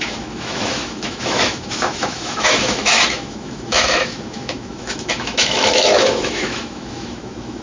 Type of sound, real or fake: fake